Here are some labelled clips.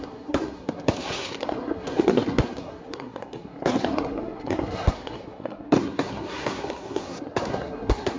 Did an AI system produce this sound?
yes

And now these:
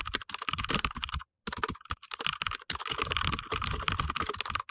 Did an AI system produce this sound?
no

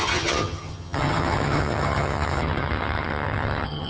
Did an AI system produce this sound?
yes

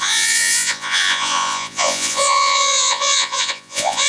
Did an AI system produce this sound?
yes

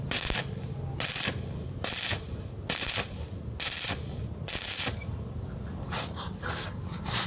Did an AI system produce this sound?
no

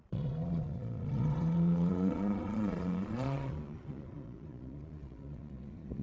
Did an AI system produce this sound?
yes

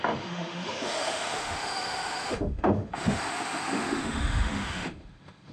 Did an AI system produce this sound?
yes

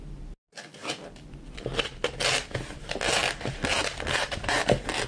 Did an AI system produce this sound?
no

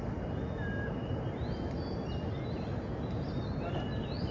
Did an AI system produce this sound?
no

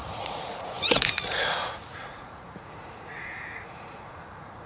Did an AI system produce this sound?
yes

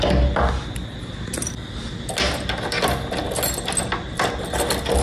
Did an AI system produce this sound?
no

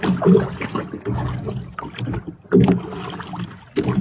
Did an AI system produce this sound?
no